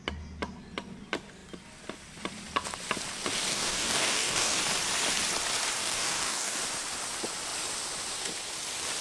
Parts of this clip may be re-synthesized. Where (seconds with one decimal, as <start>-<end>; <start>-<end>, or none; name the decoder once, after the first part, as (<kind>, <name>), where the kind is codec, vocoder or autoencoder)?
3.5-4.6 (codec, DAC); 5.8-6.6